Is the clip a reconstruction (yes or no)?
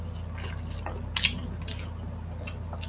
no